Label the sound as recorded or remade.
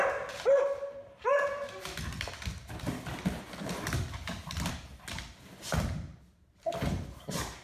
recorded